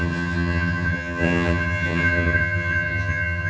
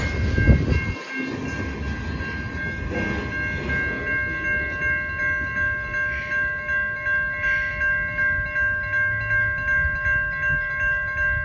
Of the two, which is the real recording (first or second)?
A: second